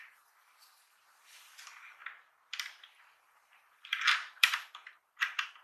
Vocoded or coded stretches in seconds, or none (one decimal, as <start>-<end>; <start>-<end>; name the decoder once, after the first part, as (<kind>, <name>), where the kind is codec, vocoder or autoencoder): 0.0-2.0 (vocoder, BigVGAN v2); 3.1-5.6